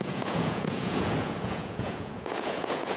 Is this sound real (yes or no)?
no